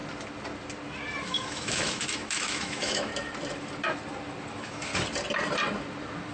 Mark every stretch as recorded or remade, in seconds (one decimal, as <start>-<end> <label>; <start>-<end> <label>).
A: 0.0-1.2 recorded; 1.2-3.1 remade; 3.1-4.5 recorded; 4.5-4.9 remade; 4.9-6.3 recorded